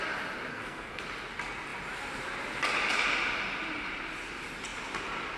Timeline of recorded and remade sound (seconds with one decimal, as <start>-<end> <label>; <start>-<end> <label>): 0.0-0.5 recorded; 0.5-1.0 remade; 1.0-5.4 recorded